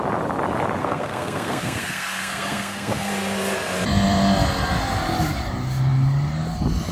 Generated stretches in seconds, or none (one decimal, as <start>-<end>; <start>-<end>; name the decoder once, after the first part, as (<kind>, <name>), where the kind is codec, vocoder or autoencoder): 0.8-3.1 (codec, SNAC)